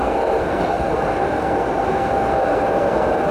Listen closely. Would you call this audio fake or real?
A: fake